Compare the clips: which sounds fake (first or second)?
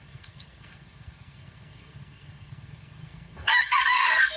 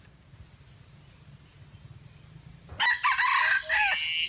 first